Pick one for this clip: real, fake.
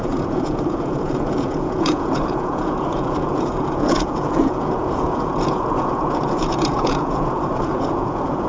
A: fake